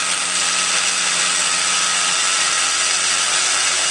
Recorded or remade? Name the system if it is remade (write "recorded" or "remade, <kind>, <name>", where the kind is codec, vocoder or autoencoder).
recorded